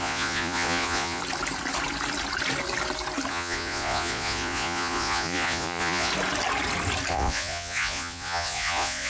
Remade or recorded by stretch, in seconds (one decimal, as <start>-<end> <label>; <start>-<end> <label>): 0.0-1.2 remade; 1.2-3.3 recorded; 3.3-6.1 remade; 6.1-7.1 recorded; 7.1-9.1 remade